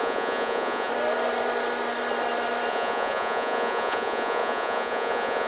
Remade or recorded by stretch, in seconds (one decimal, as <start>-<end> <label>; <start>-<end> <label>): 0.0-0.9 remade; 0.9-2.7 recorded; 2.7-5.5 remade

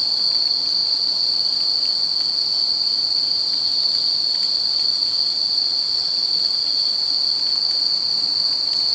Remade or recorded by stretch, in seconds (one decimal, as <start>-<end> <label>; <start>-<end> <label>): 0.0-5.2 recorded; 5.2-6.1 remade; 6.1-8.9 recorded

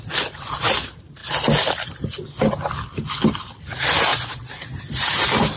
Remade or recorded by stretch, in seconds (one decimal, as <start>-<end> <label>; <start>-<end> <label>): 0.0-4.1 recorded; 4.1-4.7 remade; 4.7-5.6 recorded

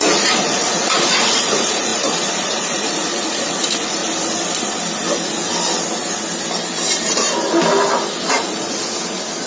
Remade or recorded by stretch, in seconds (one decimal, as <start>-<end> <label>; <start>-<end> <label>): 0.0-4.0 remade; 4.0-8.3 recorded; 8.3-9.5 remade